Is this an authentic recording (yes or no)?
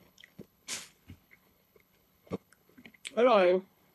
no